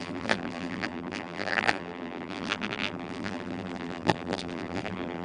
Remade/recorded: remade